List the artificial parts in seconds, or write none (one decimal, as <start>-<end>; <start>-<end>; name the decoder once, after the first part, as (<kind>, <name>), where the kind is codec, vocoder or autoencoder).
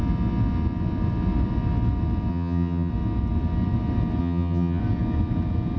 2.3-2.9 (vocoder, HiFi-GAN); 4.2-4.8